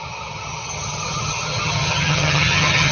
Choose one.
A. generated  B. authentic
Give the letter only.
A